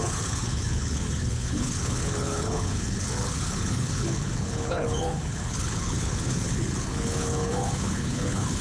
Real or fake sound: fake